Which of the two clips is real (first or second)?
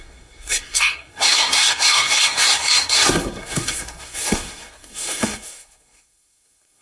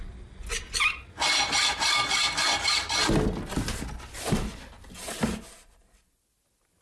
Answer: second